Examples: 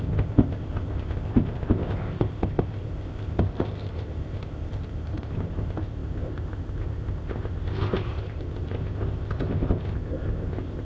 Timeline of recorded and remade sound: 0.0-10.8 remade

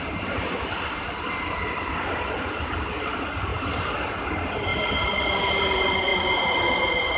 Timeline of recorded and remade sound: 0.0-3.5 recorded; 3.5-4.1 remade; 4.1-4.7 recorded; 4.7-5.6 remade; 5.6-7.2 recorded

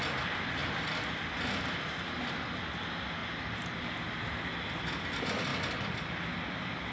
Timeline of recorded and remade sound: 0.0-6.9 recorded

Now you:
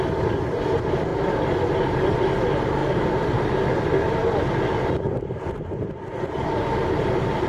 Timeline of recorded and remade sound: 0.0-2.8 recorded; 2.8-3.6 remade; 3.6-7.5 recorded

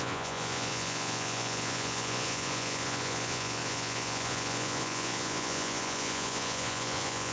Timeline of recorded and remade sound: 0.0-7.3 remade

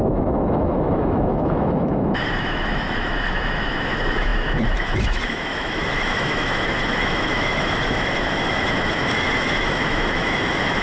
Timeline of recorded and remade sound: 0.0-10.8 remade

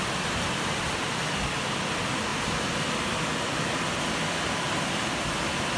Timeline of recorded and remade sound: 0.0-5.8 recorded